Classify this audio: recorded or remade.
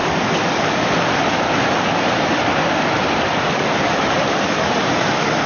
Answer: recorded